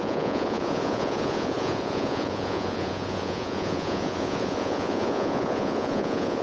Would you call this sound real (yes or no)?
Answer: no